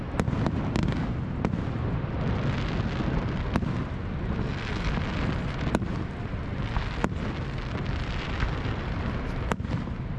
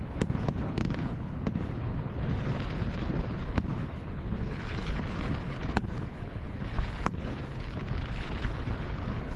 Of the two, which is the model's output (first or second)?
second